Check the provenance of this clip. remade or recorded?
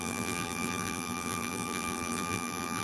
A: remade